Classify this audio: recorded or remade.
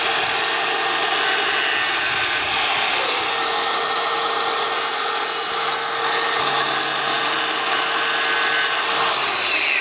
recorded